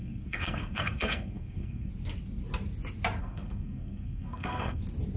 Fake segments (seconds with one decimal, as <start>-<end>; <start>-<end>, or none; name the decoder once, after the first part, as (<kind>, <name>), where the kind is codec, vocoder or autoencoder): 0.0-1.9 (codec, SNAC); 3.2-4.8